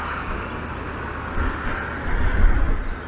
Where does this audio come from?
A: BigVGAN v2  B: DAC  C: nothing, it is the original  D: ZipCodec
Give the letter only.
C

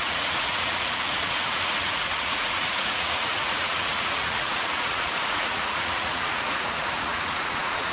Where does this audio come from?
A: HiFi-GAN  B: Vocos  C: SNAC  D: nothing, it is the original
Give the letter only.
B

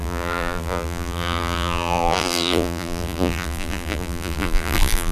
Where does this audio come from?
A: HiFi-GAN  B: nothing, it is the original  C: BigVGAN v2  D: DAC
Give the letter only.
C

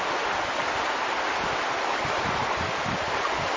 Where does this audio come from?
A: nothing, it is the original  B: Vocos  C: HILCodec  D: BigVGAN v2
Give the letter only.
A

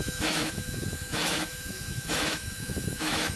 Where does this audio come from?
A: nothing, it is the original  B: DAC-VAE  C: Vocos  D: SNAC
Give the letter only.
B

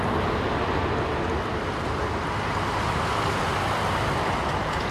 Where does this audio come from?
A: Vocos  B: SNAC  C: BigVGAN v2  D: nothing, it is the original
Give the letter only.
D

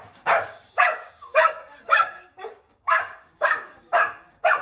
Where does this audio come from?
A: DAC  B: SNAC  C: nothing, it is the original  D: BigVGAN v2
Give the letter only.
A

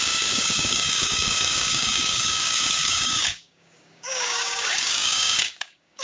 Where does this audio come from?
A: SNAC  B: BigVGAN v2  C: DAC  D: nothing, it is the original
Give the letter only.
C